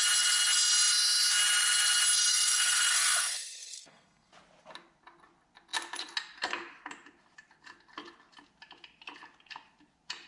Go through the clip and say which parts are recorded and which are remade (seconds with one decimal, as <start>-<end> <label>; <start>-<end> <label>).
0.0-2.3 recorded; 2.3-4.3 remade; 4.3-10.3 recorded